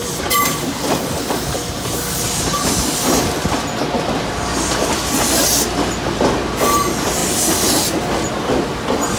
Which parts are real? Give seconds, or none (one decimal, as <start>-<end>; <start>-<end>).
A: 0.0-9.2

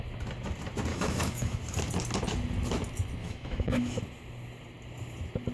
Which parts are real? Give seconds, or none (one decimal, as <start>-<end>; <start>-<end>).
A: 0.0-0.9; 1.6-3.2; 4.0-5.5

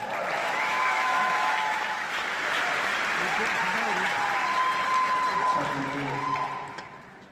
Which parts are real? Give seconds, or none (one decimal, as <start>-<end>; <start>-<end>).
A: 0.0-0.4; 2.6-7.3

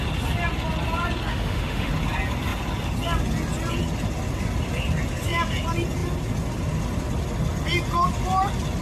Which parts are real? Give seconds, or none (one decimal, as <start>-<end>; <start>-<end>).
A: 0.0-1.3; 1.9-8.8